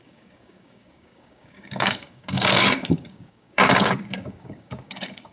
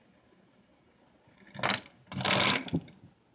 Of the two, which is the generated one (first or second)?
first